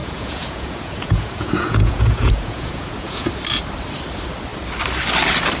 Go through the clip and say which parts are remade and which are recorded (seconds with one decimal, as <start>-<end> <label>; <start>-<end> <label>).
0.0-3.3 remade; 3.3-5.6 recorded